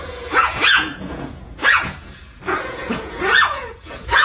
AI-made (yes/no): yes